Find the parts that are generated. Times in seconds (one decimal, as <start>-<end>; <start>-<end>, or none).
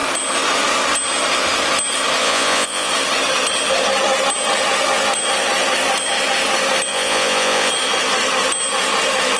2.2-2.9; 6.9-7.7